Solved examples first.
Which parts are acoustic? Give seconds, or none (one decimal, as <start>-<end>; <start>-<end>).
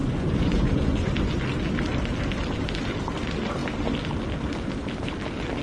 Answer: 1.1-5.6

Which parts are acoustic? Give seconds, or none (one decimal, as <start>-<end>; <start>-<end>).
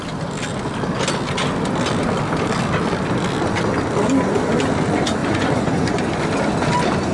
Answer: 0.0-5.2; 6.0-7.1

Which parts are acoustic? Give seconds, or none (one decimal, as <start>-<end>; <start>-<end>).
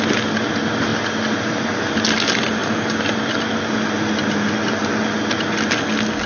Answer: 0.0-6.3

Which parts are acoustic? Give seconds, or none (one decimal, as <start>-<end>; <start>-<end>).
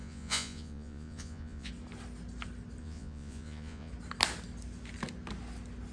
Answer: 1.7-2.8; 3.9-5.9